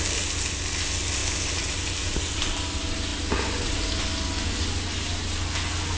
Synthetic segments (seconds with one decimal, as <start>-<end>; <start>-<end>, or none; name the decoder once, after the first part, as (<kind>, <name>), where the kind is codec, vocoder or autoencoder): 3.1-4.0 (vocoder, BigVGAN v2)